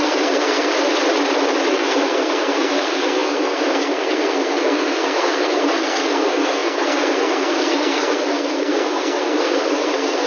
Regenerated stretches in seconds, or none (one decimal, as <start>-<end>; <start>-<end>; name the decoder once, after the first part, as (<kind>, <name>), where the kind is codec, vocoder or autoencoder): 0.0-0.7 (codec, SNAC); 1.7-10.3